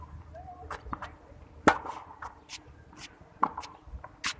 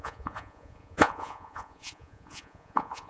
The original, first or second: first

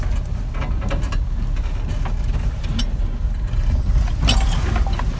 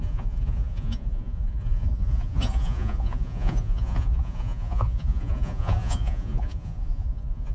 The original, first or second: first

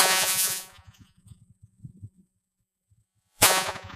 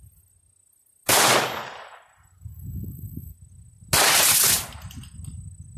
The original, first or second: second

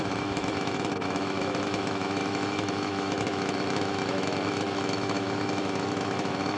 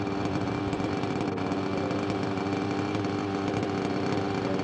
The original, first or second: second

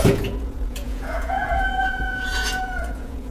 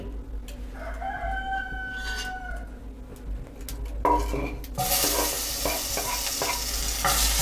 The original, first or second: second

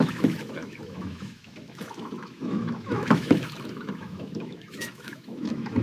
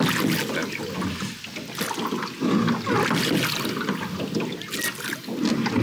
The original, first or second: second